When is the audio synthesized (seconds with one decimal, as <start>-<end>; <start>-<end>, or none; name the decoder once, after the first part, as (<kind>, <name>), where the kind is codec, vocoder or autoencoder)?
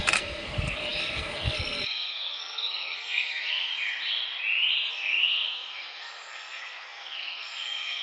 0.0-3.7 (codec, SNAC); 4.9-8.0